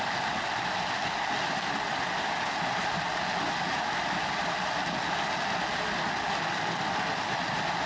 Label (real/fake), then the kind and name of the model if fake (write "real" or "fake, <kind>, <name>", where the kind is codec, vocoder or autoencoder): real